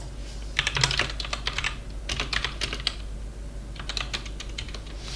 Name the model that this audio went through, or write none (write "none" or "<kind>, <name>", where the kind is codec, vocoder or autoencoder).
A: none